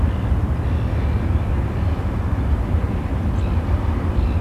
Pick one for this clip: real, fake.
real